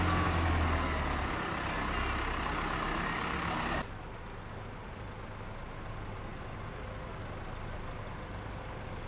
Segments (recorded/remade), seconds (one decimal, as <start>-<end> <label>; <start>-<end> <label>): 0.0-9.1 recorded